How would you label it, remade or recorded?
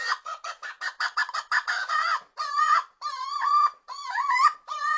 remade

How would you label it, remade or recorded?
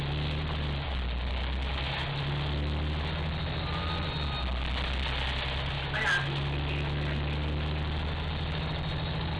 recorded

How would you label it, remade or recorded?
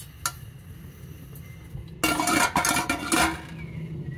recorded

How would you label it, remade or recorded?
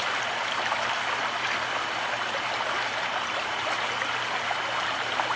recorded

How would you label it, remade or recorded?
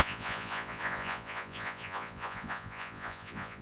remade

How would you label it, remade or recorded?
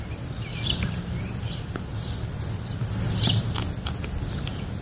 recorded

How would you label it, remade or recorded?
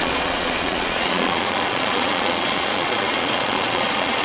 remade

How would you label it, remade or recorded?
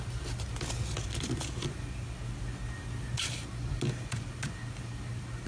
recorded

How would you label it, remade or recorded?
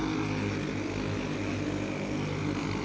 recorded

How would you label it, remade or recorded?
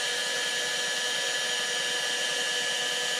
recorded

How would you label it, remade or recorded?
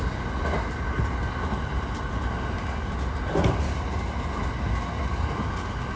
recorded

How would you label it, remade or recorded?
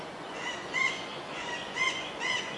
remade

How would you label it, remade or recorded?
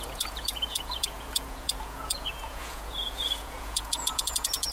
remade